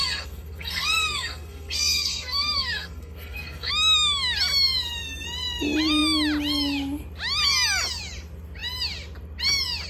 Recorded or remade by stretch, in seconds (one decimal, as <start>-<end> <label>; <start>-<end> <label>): 0.0-3.7 remade; 3.7-9.9 recorded